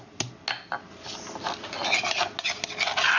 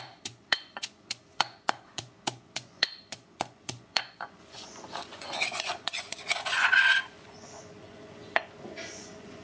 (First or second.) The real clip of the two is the first